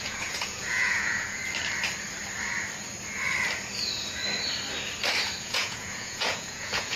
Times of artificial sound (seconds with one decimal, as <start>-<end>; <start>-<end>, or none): 0.0-1.4; 5.4-7.0